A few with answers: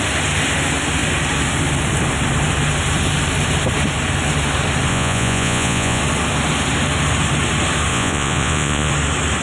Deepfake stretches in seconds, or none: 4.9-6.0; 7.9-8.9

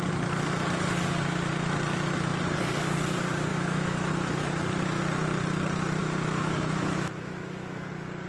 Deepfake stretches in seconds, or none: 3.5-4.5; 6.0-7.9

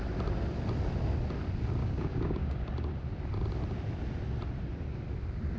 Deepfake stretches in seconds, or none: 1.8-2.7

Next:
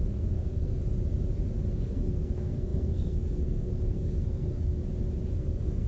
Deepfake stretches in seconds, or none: 0.0-0.8; 1.7-4.8; 5.4-5.9